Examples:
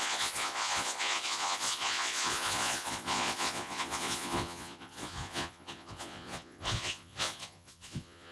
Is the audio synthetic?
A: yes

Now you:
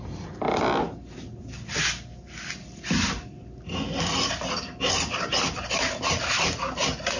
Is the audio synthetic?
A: no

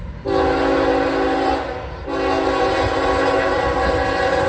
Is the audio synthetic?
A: no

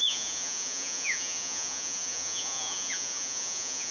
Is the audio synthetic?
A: yes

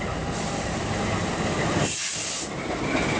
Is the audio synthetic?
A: no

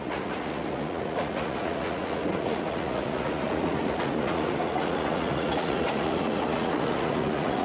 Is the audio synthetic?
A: yes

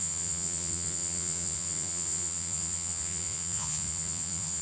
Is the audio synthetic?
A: yes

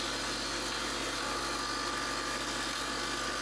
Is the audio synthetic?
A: no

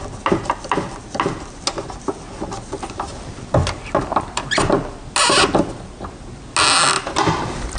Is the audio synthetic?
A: no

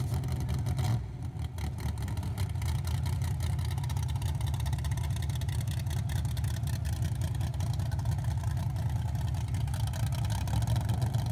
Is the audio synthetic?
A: no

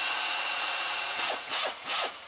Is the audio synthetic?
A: yes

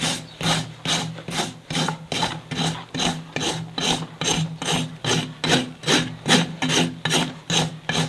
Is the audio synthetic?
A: no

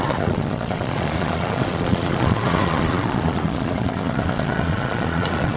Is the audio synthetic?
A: yes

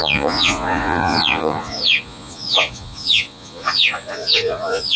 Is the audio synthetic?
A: yes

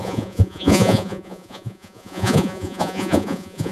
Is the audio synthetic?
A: yes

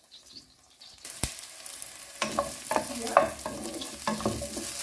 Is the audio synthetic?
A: no